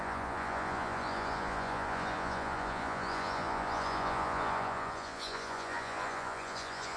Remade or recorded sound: remade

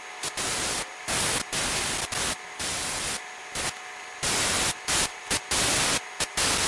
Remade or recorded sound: recorded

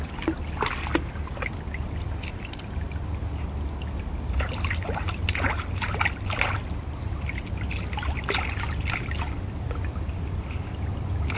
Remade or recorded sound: recorded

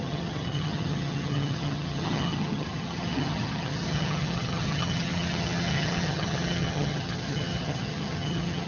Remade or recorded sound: remade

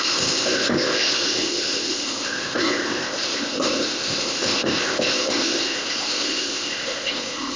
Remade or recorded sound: remade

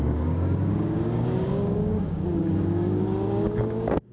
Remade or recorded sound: remade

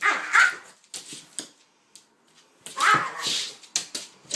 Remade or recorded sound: recorded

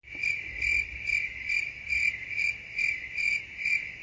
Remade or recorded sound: recorded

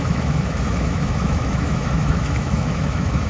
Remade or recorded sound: remade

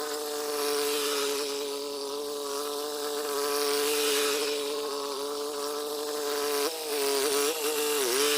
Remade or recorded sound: recorded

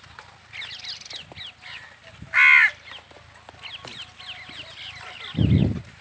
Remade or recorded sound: recorded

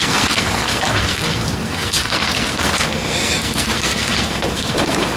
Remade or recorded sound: remade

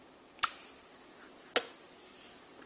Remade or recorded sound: recorded